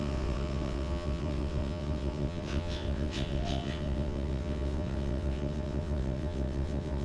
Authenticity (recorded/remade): remade